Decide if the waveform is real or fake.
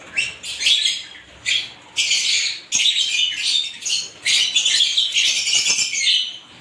real